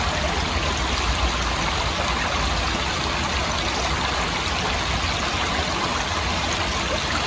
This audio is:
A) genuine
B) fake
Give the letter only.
A